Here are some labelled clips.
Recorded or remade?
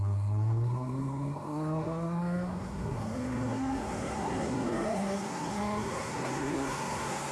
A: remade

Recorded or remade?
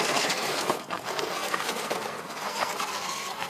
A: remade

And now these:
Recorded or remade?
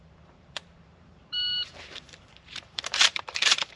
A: remade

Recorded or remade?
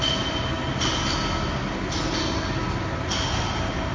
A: recorded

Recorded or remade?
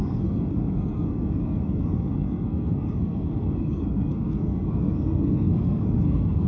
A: remade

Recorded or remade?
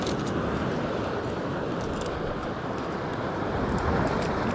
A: remade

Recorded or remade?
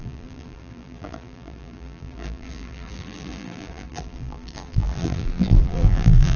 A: remade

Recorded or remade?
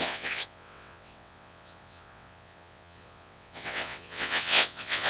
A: remade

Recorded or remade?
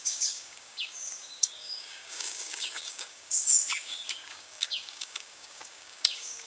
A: remade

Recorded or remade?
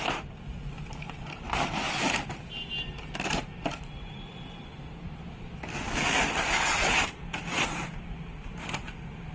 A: recorded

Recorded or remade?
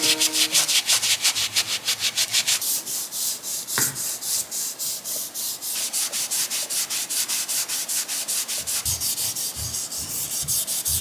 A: recorded